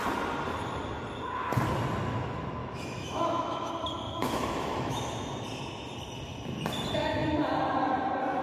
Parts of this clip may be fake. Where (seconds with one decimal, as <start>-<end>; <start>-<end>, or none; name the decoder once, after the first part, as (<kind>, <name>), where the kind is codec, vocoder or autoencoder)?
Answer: 2.6-3.7 (autoencoder, DAC-VAE); 4.2-5.0

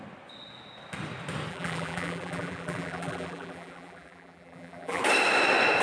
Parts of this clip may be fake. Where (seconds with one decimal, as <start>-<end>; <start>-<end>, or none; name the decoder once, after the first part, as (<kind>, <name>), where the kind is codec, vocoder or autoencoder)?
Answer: 1.5-5.0 (vocoder, BigVGAN v2)